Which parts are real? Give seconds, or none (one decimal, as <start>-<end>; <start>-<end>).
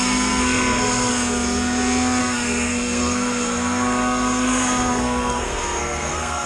1.1-2.2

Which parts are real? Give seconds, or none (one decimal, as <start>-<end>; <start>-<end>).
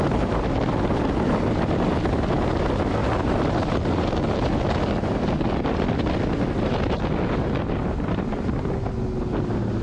0.0-9.8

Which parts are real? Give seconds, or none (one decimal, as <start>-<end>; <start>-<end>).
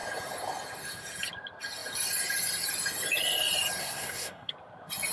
0.0-3.8; 4.5-5.1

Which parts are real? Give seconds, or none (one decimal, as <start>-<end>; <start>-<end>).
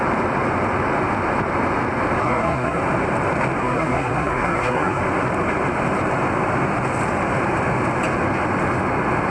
0.0-2.2; 2.8-3.6; 5.0-9.3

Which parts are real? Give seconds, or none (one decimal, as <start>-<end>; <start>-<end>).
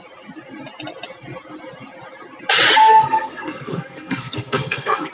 0.0-2.8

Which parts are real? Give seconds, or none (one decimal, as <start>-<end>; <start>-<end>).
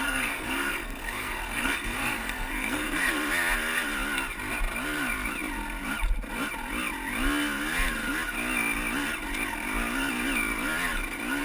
3.1-11.4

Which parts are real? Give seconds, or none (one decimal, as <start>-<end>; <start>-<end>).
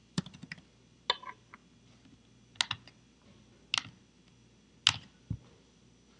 0.0-6.2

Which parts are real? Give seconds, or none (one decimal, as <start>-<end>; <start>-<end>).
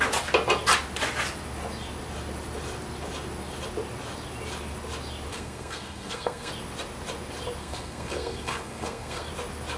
0.0-5.3; 6.5-7.6; 9.3-9.8